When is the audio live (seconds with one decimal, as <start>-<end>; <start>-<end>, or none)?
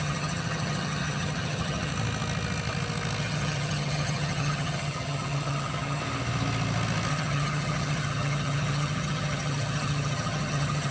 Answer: 1.9-3.2; 6.0-7.1